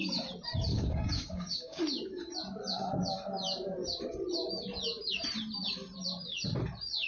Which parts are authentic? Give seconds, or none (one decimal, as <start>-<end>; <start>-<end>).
0.0-0.7; 1.8-7.1